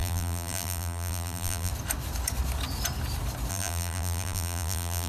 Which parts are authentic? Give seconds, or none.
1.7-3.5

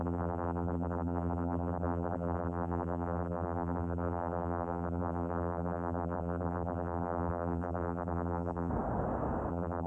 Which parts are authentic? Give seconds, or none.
8.7-9.5

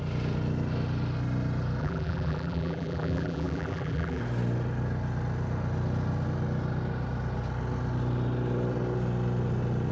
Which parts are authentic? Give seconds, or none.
0.0-1.8; 4.2-9.9